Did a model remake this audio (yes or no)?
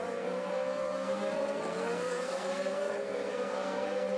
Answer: yes